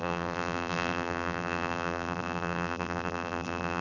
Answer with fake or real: fake